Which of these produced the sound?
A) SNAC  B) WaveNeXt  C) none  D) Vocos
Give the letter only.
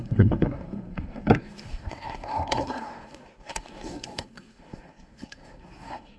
A